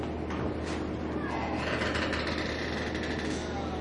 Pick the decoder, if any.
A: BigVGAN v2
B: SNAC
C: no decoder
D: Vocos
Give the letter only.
C